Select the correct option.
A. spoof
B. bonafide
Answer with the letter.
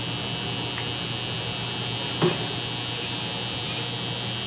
B